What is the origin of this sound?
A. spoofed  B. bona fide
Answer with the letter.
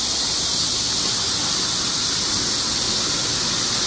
B